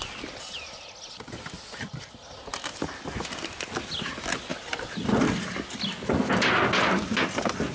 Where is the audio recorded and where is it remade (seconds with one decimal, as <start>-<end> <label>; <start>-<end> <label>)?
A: 0.0-7.7 recorded